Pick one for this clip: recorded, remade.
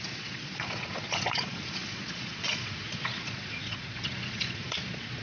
remade